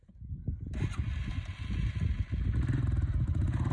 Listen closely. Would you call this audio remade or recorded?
recorded